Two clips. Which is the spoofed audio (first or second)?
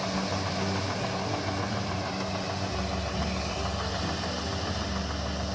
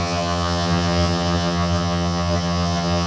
second